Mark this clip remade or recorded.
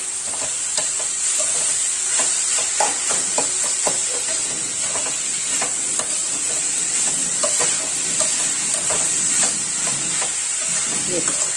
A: recorded